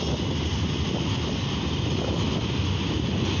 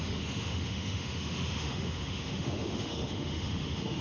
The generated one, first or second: second